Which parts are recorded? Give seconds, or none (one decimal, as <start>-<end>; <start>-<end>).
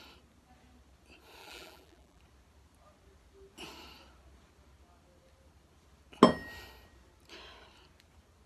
0.0-1.4; 2.2-8.5